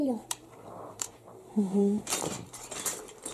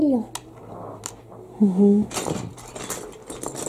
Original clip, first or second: second